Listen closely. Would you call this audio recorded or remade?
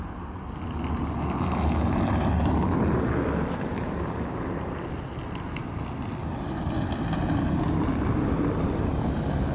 recorded